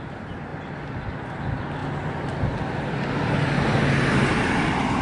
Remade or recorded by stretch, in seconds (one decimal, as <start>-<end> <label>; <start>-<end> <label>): 0.0-5.0 recorded